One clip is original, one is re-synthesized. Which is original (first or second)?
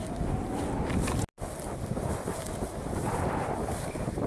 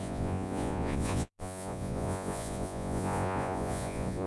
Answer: first